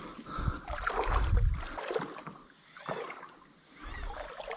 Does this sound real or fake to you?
real